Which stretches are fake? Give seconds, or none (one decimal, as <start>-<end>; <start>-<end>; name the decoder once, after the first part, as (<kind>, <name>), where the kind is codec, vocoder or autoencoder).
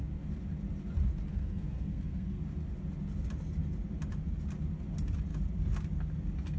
1.3-2.4 (codec, SNAC)